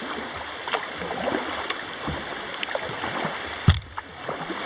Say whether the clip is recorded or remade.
remade